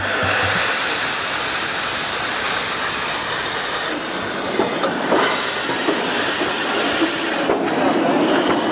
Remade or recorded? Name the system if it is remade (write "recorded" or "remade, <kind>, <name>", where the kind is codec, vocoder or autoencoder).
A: recorded